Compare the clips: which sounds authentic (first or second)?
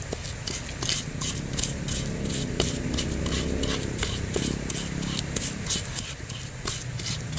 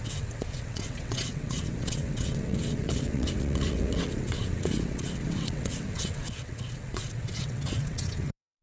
first